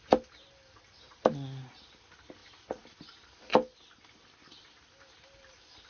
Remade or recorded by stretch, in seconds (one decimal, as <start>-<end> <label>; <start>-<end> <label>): 0.0-5.9 recorded